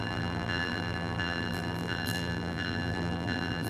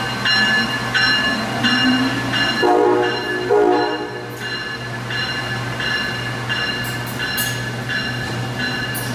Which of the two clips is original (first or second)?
second